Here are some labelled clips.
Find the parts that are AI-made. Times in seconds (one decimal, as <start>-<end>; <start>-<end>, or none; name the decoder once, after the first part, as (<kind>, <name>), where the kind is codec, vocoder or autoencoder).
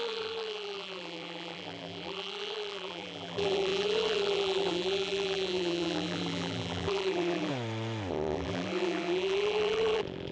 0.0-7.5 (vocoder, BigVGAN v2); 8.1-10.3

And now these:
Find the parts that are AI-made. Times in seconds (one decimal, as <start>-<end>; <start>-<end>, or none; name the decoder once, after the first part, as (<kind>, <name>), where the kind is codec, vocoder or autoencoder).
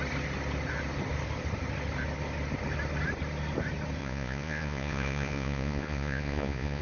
4.0-6.8 (vocoder, Vocos)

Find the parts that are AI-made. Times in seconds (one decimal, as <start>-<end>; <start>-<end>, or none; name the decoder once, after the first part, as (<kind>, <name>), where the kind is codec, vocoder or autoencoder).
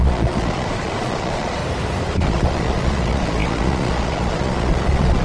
0.0-1.6 (vocoder, Vocos); 2.1-5.2